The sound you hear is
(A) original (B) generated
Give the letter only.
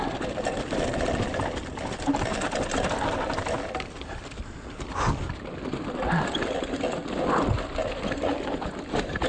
A